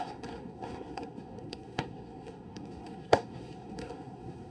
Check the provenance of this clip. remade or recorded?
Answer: remade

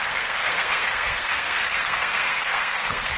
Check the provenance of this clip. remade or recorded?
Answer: remade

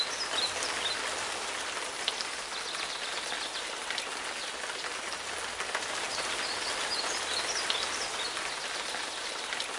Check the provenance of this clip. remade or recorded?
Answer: recorded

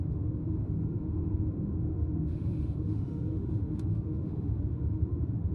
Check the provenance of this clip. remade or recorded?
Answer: remade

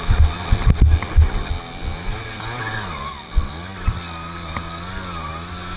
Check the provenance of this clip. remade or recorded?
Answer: recorded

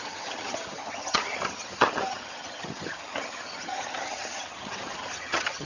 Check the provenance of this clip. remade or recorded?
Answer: remade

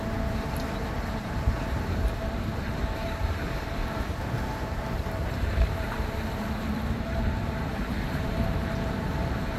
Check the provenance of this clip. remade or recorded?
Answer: remade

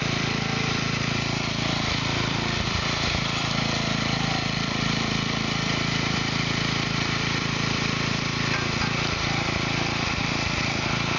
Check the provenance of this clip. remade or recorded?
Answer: remade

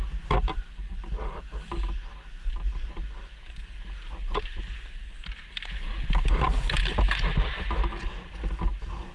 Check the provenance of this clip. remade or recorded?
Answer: recorded